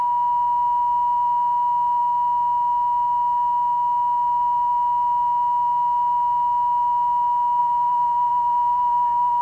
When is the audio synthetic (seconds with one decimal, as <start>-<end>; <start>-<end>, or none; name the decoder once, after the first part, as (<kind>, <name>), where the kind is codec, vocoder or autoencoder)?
7.6-9.4 (vocoder, BigVGAN v2)